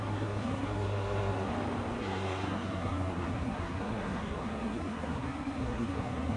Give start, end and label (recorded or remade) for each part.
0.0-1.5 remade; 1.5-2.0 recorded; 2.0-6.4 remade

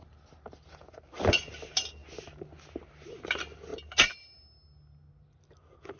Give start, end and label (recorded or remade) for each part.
0.0-6.0 recorded

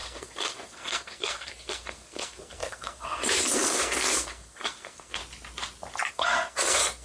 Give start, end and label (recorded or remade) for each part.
0.0-5.2 remade; 5.2-6.1 recorded; 6.1-7.0 remade

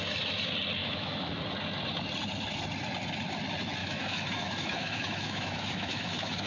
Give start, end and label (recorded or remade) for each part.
0.0-0.8 recorded; 0.8-1.4 remade; 1.4-3.8 recorded; 3.8-6.5 remade

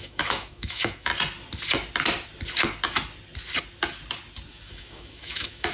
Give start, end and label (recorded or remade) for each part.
0.0-1.1 remade; 1.1-4.5 recorded; 4.5-5.7 remade

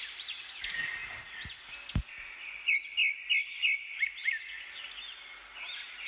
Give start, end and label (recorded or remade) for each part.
0.0-6.1 recorded